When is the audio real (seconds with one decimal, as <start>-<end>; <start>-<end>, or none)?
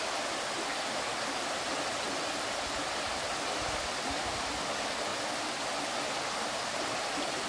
0.0-7.5